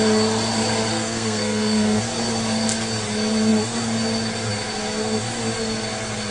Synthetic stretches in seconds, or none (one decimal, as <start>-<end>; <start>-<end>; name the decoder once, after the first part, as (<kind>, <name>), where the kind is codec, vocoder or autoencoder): 0.9-2.0 (codec, SNAC)